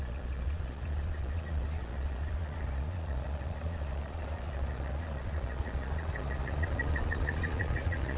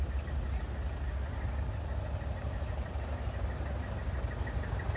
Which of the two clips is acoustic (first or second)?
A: second